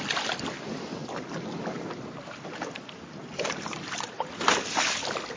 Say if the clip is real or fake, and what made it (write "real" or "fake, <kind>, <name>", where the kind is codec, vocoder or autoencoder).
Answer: real